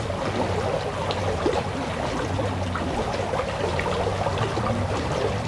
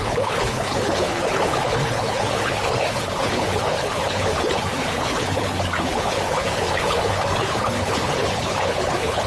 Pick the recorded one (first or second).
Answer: first